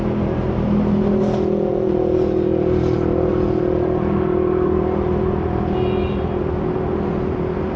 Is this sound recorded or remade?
recorded